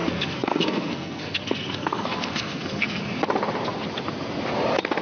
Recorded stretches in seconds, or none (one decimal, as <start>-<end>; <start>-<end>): 3.0-5.0